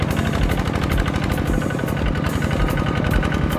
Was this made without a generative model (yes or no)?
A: yes